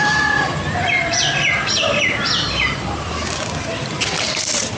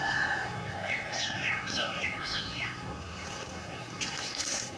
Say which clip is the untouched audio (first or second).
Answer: first